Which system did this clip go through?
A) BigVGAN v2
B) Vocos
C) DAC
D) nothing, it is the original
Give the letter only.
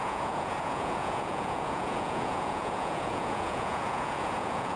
B